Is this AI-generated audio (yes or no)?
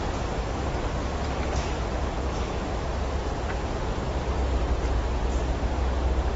no